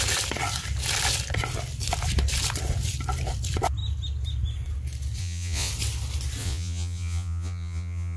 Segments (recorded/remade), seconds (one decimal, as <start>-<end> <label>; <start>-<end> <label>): 0.0-5.2 recorded; 5.2-5.7 remade; 5.7-6.4 recorded; 6.4-8.2 remade